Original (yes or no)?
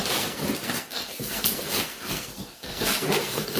no